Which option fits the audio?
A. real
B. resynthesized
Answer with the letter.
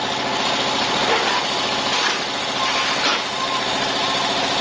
A